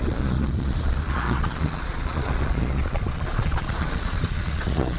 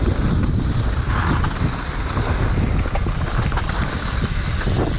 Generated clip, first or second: first